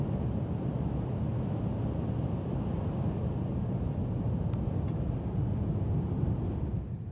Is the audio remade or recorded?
recorded